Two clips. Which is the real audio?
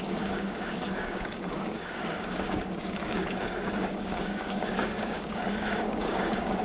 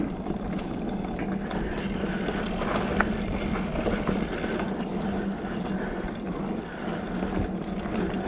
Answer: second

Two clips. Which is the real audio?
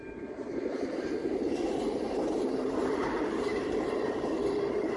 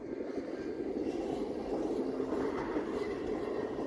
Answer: second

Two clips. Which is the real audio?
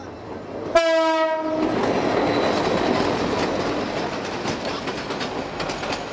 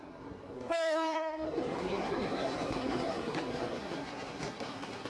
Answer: first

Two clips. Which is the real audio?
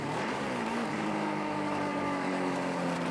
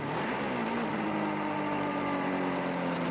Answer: second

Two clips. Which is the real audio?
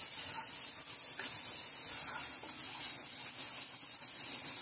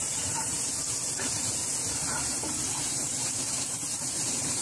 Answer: first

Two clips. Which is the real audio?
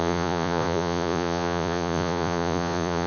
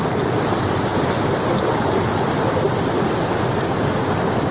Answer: second